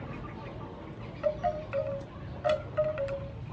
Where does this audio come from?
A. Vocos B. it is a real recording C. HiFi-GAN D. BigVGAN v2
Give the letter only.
B